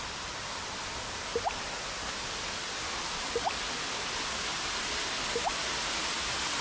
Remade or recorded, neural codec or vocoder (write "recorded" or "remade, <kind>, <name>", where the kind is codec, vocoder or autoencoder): recorded